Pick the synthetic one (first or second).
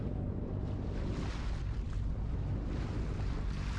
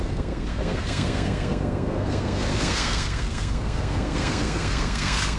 second